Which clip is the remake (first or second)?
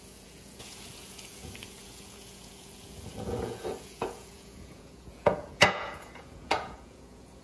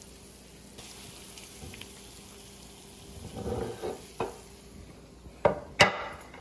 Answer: first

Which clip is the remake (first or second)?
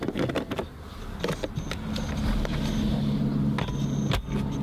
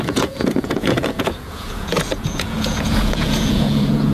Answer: second